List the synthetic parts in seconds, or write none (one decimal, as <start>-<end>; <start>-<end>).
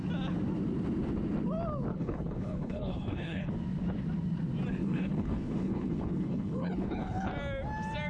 1.9-3.5; 4.8-7.3